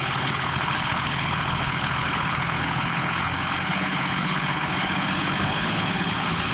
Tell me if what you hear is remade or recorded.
remade